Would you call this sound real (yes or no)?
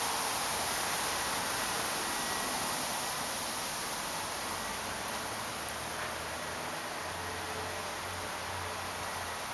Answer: yes